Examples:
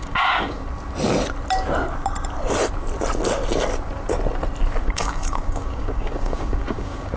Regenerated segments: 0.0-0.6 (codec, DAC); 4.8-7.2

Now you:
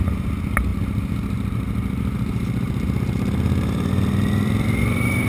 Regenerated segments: 0.7-3.9 (vocoder, BigVGAN v2)

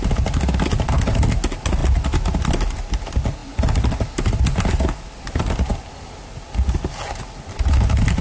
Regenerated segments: none